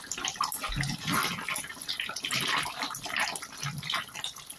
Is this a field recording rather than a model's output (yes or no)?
yes